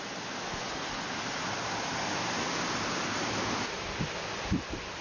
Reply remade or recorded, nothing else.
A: remade